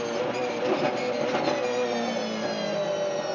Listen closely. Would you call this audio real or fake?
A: real